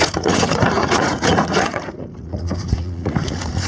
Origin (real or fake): fake